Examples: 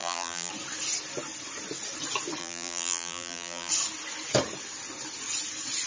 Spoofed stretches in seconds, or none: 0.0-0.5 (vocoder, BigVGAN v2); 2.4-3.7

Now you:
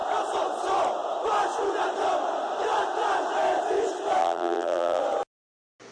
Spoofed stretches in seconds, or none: 4.2-5.0 (vocoder, BigVGAN v2)

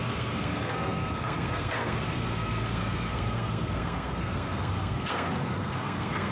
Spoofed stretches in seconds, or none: 0.0-6.3 (codec, SNAC)

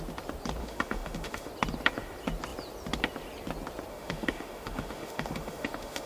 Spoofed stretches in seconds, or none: 0.6-1.5 (autoencoder, DAC-VAE); 3.9-6.1